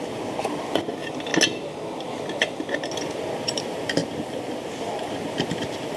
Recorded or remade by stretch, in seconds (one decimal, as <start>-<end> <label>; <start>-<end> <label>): 0.0-1.3 remade; 1.3-3.5 recorded; 3.5-6.0 remade